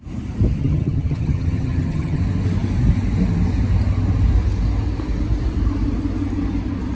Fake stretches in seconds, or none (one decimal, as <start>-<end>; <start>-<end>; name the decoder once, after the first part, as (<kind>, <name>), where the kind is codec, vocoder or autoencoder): 0.6-2.2 (vocoder, HiFi-GAN)